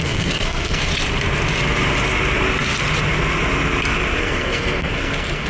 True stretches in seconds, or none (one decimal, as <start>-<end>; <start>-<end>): 0.9-4.2